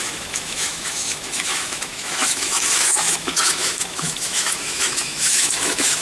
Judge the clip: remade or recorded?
remade